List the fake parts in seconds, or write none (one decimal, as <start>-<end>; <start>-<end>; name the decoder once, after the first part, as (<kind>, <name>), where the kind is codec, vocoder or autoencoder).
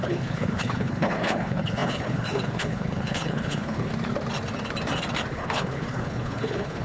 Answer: 0.0-3.9 (codec, HILCodec); 5.3-6.8